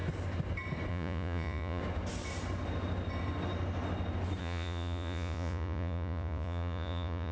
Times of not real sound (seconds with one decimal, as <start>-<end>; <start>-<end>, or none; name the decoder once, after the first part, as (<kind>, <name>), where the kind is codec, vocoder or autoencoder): 0.9-1.8 (vocoder, Vocos); 4.4-7.3

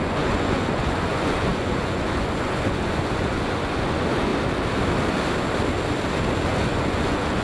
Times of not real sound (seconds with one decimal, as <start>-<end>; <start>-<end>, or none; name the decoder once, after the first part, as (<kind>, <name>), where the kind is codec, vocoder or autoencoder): 0.0-4.3 (vocoder, Vocos); 6.5-7.4

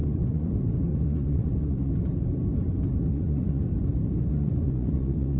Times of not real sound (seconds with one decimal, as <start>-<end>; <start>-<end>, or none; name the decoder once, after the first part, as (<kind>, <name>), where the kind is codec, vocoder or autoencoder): 0.0-0.5 (vocoder, Vocos); 0.9-1.9; 3.1-3.6; 4.3-5.4

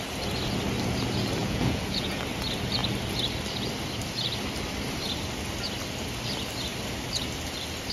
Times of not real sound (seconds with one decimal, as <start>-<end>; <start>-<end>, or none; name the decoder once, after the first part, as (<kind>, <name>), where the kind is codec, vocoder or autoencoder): 1.4-2.2 (vocoder, Vocos)

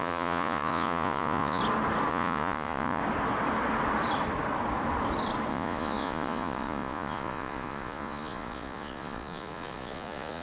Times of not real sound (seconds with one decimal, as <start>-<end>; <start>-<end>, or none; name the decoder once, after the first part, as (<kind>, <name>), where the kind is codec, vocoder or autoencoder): 0.0-1.6 (vocoder, Vocos); 2.1-3.0; 5.5-10.4

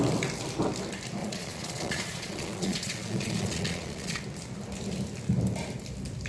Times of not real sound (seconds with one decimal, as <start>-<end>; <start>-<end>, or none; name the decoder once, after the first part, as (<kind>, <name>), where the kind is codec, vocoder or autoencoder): 1.2-4.2 (vocoder, Vocos)

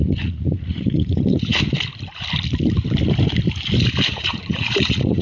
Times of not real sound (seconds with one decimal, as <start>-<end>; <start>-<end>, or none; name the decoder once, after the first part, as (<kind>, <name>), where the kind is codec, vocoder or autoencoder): 0.0-1.6 (vocoder, Vocos); 4.1-5.2